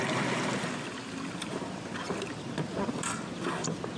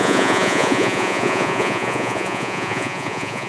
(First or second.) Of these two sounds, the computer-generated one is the second